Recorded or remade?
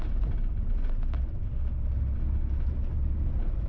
recorded